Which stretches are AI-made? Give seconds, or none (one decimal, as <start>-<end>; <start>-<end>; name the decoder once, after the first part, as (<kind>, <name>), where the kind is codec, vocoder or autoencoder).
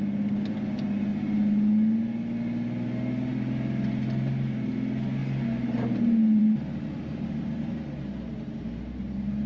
none